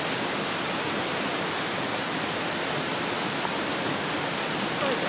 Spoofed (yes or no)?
no